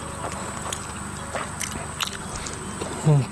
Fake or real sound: real